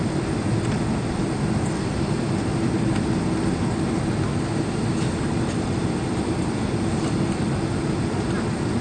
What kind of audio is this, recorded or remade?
recorded